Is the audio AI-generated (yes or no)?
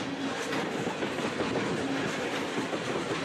no